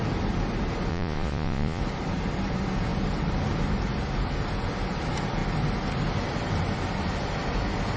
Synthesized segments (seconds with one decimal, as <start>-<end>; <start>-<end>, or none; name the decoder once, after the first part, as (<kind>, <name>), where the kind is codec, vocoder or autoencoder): 0.9-1.8 (vocoder, Vocos)